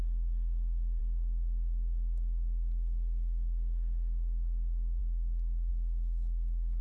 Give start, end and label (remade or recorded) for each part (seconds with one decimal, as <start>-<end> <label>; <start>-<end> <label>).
0.0-6.8 recorded